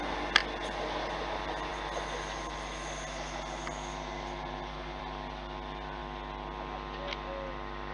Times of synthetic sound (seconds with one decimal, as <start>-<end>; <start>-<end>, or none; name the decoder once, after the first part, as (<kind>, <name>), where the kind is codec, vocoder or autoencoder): none